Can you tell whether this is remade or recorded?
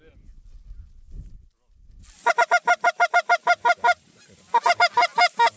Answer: recorded